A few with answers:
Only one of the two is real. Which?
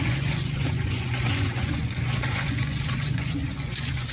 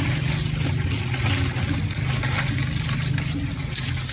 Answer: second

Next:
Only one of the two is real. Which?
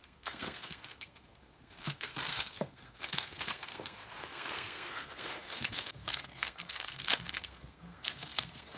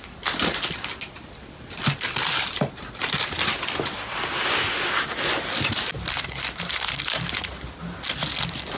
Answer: second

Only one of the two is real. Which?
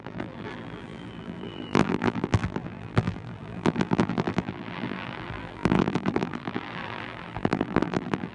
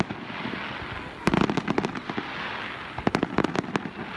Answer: second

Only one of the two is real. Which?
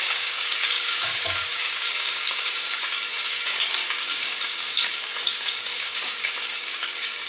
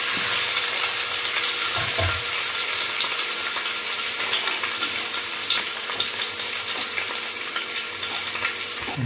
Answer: second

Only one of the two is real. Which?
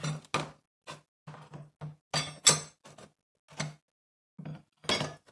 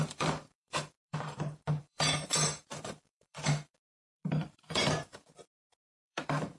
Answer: first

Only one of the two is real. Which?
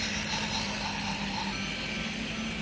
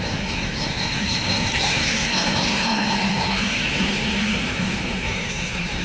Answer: first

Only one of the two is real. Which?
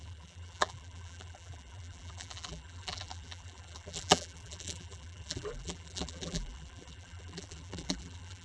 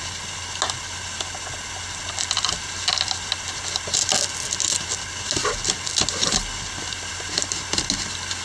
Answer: second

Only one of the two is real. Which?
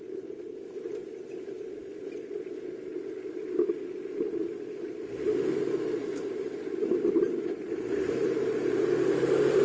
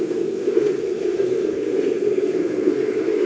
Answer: first